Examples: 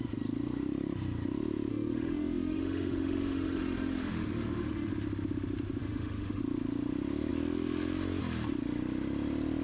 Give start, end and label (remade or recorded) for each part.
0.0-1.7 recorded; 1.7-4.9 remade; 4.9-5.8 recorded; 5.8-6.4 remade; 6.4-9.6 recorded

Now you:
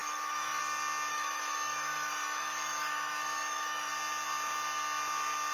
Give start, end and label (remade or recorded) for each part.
0.0-0.6 remade; 0.6-1.1 recorded; 1.1-3.9 remade; 3.9-5.5 recorded

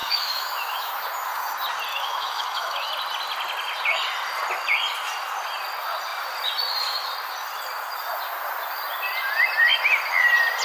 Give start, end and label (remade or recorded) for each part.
0.0-0.9 remade; 0.9-1.9 recorded; 1.9-2.9 remade; 2.9-10.6 recorded

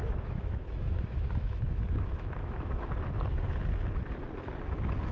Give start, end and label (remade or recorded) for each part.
0.0-2.9 remade; 2.9-5.1 recorded

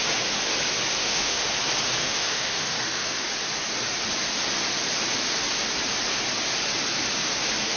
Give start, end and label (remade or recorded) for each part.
0.0-1.0 recorded; 1.0-1.5 remade; 1.5-2.0 recorded; 2.0-3.3 remade; 3.3-7.8 recorded

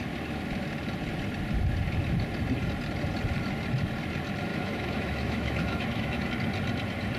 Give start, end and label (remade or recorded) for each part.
0.0-4.5 recorded; 4.5-6.3 remade; 6.3-7.2 recorded